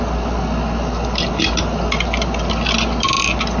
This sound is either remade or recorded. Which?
recorded